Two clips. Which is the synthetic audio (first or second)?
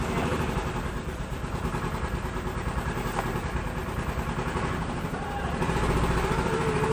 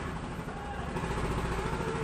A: first